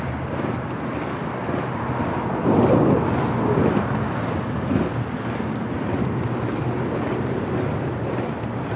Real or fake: real